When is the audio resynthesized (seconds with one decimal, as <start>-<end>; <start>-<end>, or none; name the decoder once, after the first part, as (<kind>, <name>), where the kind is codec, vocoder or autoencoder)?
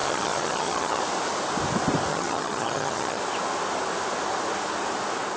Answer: 0.0-1.0 (vocoder, HiFi-GAN); 2.1-3.2